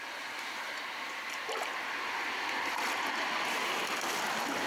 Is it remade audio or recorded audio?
recorded